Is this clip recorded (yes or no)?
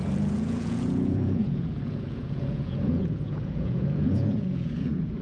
no